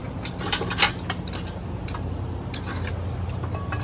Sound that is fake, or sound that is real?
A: real